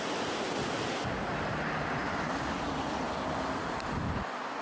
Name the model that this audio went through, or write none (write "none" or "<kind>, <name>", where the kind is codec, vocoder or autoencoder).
none